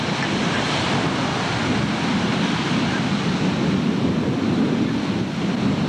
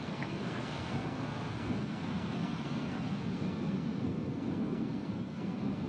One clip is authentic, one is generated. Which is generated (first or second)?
second